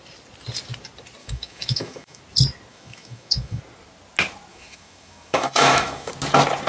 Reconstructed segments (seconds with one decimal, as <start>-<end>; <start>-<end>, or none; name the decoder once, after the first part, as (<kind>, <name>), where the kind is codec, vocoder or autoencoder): 1.2-2.2 (autoencoder, DAC-VAE); 2.7-3.6; 4.5-6.1